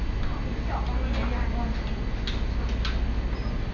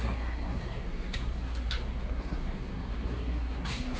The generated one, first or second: second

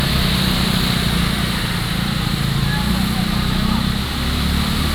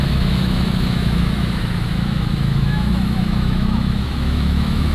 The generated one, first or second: second